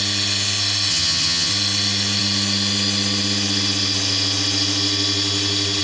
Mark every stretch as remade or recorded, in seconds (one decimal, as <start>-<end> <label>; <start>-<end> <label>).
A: 0.0-0.9 recorded; 0.9-1.5 remade; 1.5-5.8 recorded